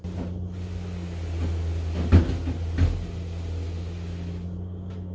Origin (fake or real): real